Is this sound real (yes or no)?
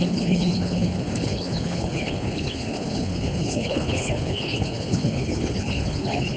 no